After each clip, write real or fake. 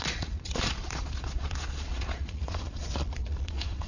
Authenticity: fake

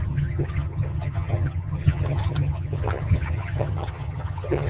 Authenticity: fake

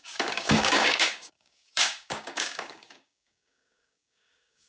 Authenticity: fake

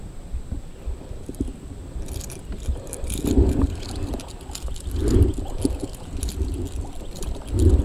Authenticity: real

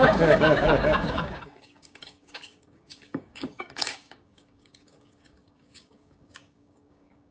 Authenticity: fake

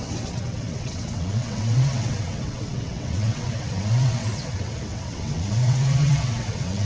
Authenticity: fake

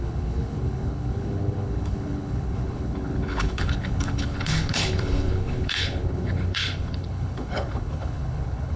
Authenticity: fake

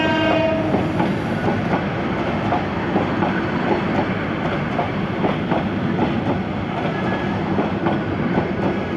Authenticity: real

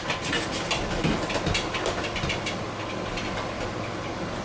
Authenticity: real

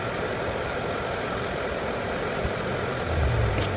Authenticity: real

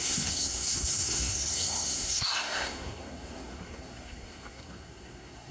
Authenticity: fake